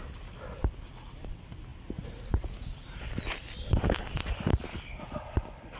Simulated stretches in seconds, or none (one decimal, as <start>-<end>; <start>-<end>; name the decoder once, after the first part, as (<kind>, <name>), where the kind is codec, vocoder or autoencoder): none